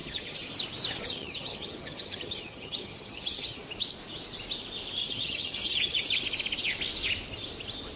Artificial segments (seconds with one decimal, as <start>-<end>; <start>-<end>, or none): 0.0-0.5; 0.9-3.6; 5.0-6.0